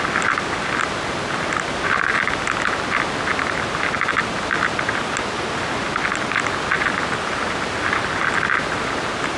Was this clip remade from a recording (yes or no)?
no